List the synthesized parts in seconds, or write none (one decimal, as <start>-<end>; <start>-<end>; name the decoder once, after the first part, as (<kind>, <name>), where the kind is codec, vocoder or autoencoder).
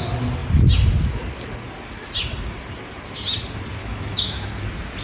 3.8-4.5 (autoencoder, DAC-VAE)